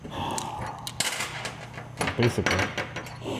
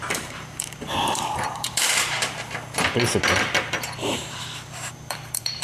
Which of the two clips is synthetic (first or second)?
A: second